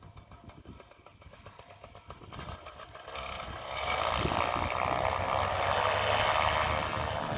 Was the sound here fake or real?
real